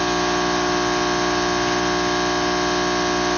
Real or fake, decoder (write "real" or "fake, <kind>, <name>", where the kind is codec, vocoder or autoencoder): real